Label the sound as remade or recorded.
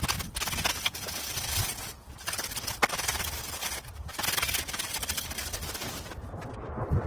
recorded